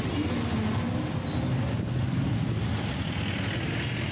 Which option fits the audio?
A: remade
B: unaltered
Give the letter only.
B